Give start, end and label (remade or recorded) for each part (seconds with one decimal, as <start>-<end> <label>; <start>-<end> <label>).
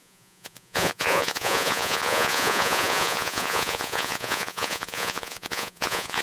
0.0-6.2 remade